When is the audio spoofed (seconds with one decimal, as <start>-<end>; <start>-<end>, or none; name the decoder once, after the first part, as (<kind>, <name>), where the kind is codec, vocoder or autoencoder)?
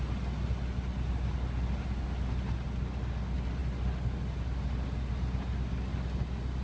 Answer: none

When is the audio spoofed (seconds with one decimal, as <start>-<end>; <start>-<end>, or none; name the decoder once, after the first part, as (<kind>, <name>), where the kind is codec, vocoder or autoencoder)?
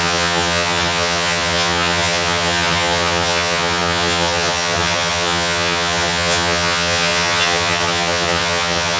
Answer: 0.0-9.0 (vocoder, HiFi-GAN)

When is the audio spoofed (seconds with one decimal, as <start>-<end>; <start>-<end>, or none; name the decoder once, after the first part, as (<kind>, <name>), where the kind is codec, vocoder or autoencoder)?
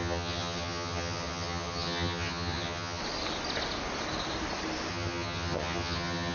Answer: 0.0-3.0 (vocoder, HiFi-GAN); 4.9-6.3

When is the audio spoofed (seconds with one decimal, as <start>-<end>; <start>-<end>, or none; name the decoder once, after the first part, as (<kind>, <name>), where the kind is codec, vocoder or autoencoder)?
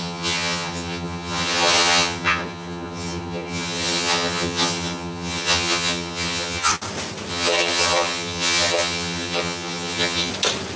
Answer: 0.0-6.7 (vocoder, HiFi-GAN); 7.3-10.3